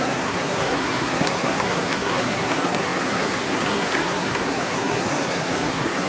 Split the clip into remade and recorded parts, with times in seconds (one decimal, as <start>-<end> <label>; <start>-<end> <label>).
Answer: 0.0-6.1 remade